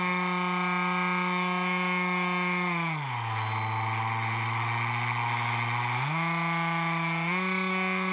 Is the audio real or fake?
real